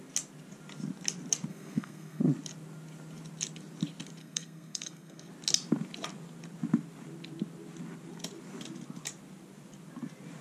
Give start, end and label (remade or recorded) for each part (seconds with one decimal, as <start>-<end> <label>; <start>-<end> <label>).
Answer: 0.0-1.5 recorded; 1.5-2.2 remade; 2.2-4.2 recorded; 4.2-5.3 remade; 5.3-10.4 recorded